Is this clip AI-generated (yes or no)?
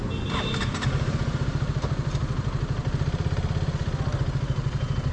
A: no